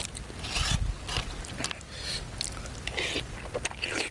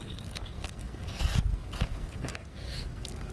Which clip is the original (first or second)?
first